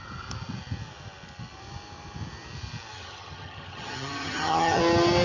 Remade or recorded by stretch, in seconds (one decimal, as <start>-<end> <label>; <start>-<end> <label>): 0.0-2.9 recorded; 2.9-4.8 remade; 4.8-5.2 recorded